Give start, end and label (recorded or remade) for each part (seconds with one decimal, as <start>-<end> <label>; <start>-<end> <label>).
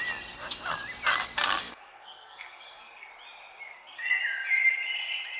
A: 0.0-1.6 recorded; 1.6-3.1 remade; 3.1-3.7 recorded; 3.7-4.2 remade; 4.2-5.4 recorded